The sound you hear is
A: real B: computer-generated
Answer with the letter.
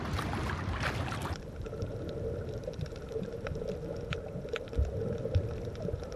B